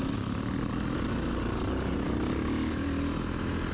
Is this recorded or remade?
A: recorded